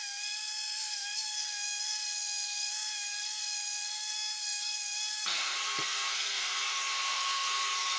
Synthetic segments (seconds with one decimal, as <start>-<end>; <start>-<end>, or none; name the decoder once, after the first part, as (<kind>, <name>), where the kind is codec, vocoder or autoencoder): 0.0-8.0 (codec, SNAC)